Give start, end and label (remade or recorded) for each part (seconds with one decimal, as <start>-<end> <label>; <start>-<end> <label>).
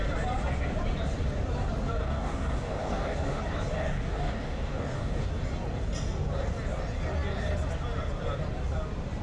0.0-2.0 recorded; 2.0-3.4 remade; 3.4-3.8 recorded; 3.8-5.3 remade; 5.3-9.2 recorded